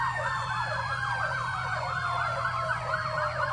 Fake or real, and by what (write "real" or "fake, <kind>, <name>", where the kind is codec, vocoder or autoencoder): fake, vocoder, Vocos